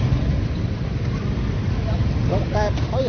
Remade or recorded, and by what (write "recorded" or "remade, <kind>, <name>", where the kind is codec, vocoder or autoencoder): recorded